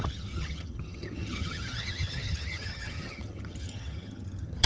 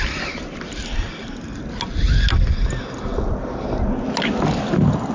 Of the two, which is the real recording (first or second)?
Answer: second